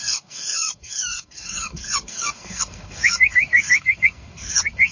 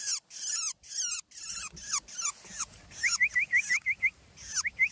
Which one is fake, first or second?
first